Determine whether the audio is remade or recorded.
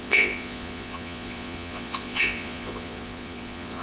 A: remade